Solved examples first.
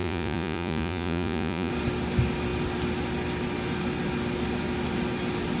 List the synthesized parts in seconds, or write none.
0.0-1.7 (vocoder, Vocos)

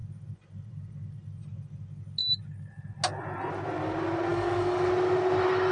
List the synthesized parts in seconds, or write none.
4.3-4.9 (codec, DAC)

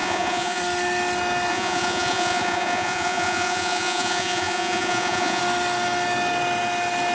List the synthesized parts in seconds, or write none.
0.0-0.6 (vocoder, Vocos); 1.5-5.4

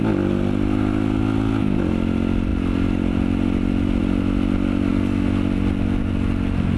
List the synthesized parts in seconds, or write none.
none

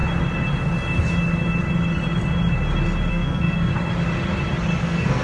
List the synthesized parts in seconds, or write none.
3.1-3.7 (codec, SNAC); 4.8-5.2

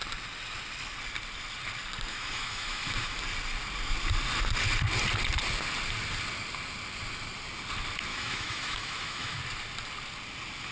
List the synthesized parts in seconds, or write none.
2.1-3.2 (autoencoder, DAC-VAE); 8.1-9.4